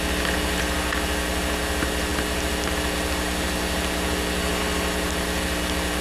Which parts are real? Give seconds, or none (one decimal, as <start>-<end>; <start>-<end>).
0.0-6.0

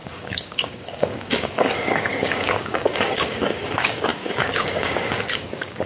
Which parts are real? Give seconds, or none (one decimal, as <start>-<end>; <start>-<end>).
none

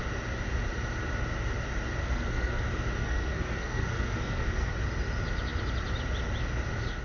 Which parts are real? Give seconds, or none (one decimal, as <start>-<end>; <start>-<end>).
0.0-2.0; 2.6-3.0; 4.7-7.0